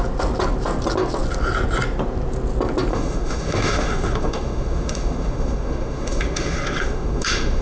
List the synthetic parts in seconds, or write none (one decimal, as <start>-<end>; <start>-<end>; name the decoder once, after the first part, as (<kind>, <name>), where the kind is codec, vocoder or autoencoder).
2.9-7.6 (autoencoder, DAC-VAE)